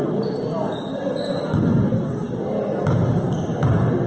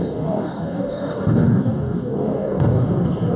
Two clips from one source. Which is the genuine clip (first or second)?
first